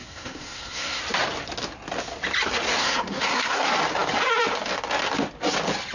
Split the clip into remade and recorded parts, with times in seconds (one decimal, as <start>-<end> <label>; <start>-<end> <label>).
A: 0.0-1.0 remade; 1.0-2.8 recorded; 2.8-3.7 remade; 3.7-5.9 recorded

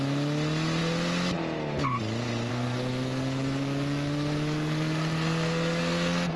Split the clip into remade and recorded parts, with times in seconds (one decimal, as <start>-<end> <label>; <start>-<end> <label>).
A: 0.0-2.5 recorded; 2.5-6.4 remade

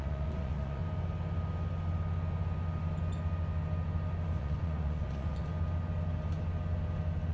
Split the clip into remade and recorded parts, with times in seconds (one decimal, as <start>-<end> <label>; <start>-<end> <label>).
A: 0.0-0.8 remade; 0.8-4.4 recorded; 4.4-5.5 remade; 5.5-7.3 recorded

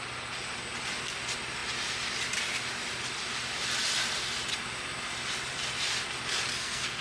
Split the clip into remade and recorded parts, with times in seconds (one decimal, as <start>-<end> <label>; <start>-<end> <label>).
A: 0.0-6.5 recorded; 6.5-7.0 remade